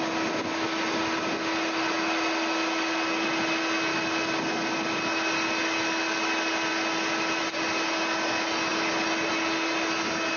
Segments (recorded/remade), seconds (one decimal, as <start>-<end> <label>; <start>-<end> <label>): 0.0-10.4 recorded